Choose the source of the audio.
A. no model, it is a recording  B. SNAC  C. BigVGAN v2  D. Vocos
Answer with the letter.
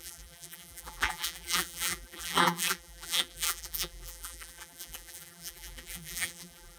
C